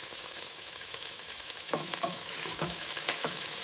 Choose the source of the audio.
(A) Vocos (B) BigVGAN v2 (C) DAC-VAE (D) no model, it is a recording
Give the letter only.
C